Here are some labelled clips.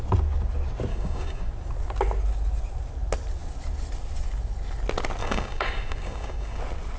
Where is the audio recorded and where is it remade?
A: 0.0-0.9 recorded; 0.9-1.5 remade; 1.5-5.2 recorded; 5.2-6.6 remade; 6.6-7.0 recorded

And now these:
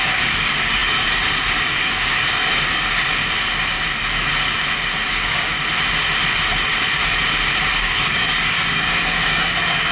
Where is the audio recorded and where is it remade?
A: 0.0-3.1 remade; 3.1-5.1 recorded; 5.1-5.5 remade; 5.5-7.7 recorded; 7.7-9.9 remade